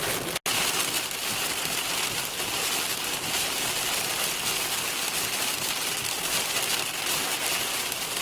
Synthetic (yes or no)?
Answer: no